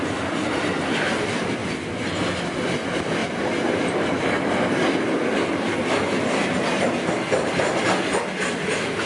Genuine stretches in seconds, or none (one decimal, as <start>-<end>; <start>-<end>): 0.0-9.1